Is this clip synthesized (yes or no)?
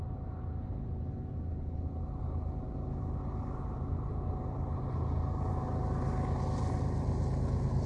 no